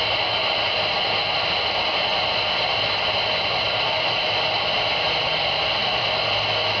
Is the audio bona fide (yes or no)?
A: yes